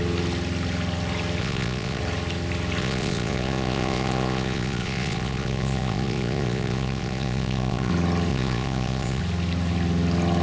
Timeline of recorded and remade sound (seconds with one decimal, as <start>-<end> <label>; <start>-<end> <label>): 0.0-1.4 recorded; 1.4-2.0 remade; 2.0-2.8 recorded; 2.8-7.9 remade; 7.9-8.3 recorded; 8.3-9.2 remade; 9.2-10.4 recorded